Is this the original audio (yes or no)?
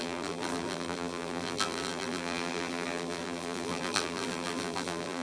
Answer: no